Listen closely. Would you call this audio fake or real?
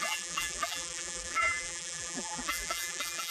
fake